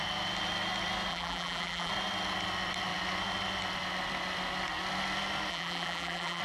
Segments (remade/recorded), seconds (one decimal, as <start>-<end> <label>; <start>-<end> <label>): 0.0-1.1 recorded; 1.1-1.9 remade; 1.9-5.5 recorded; 5.5-6.4 remade